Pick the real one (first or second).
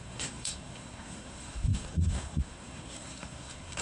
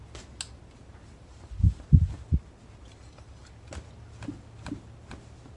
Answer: second